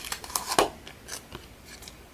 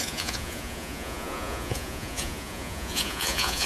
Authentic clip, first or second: first